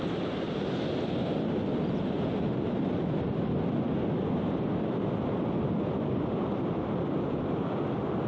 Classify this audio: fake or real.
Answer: real